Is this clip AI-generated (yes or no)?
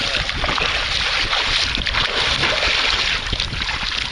no